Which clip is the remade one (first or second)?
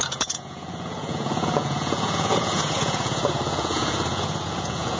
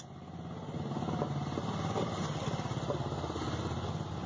first